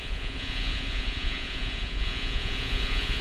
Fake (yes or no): yes